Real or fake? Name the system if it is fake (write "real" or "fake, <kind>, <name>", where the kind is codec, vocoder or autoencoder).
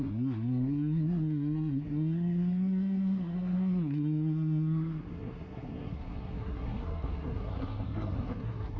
fake, codec, SNAC